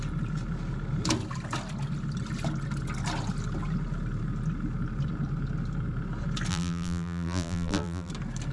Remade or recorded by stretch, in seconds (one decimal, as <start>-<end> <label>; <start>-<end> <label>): 0.0-6.5 recorded; 6.5-8.1 remade; 8.1-8.5 recorded